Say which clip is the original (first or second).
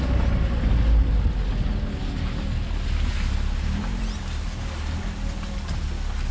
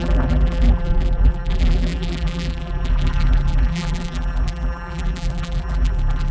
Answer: first